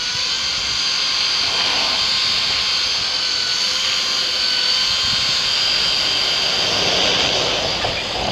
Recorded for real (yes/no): yes